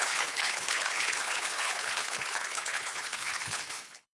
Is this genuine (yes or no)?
no